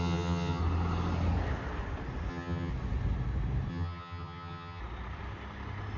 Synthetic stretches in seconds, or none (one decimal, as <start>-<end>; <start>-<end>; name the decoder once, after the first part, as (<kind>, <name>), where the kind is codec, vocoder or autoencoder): 0.0-0.6 (vocoder, HiFi-GAN); 2.3-2.7; 3.7-4.8